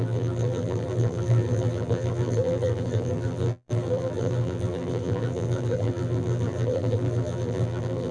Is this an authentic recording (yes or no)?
no